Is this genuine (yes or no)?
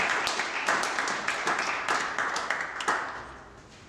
yes